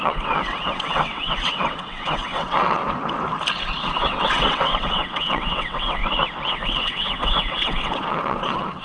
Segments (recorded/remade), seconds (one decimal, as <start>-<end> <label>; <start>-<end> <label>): 0.0-2.8 remade; 2.8-3.8 recorded; 3.8-6.0 remade; 6.0-6.5 recorded; 6.5-8.8 remade